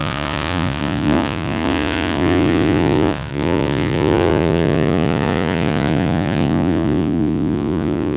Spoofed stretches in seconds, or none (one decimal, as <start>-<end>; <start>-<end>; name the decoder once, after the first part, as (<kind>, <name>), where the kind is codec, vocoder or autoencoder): 0.0-8.2 (vocoder, Vocos)